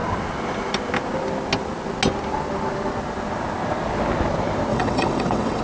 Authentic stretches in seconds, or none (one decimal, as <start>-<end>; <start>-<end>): 0.0-4.7